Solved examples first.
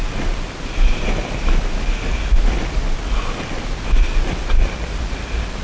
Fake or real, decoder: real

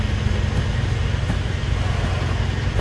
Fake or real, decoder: real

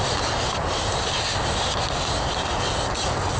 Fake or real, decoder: real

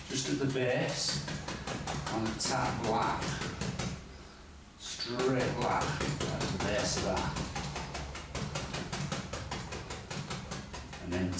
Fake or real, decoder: fake, vocoder, BigVGAN v2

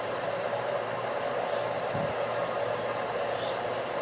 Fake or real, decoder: real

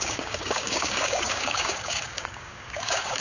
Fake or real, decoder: fake, codec, DAC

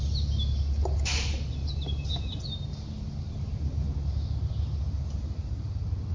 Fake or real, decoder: real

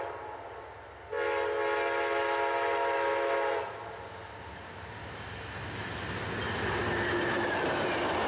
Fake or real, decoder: real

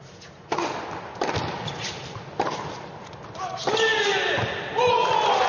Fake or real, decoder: real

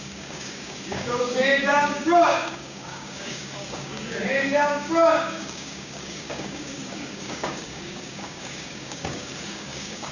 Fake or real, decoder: fake, codec, DAC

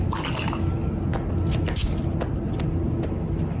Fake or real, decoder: real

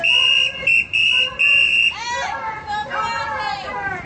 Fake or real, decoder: real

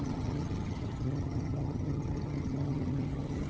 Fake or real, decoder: fake, vocoder, HiFi-GAN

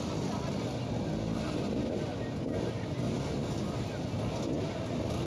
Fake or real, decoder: real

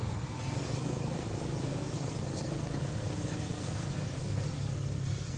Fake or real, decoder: fake, codec, SNAC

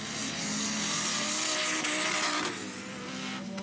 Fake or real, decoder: real